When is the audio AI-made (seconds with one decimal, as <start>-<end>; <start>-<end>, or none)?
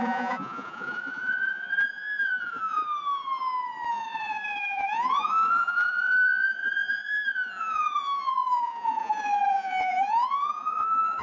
0.0-2.8; 3.9-11.2